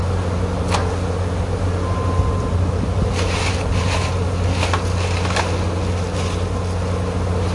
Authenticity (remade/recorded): recorded